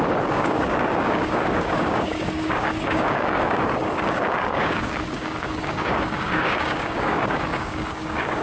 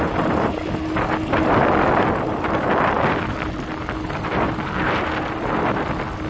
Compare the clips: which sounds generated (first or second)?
first